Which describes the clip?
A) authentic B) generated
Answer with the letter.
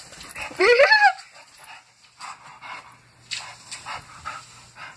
A